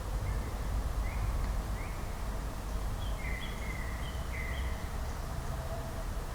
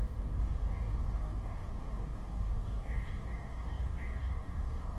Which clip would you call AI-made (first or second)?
second